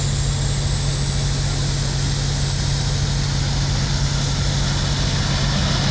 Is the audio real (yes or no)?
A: yes